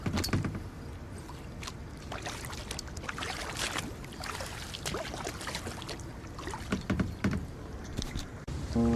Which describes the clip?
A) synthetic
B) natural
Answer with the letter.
B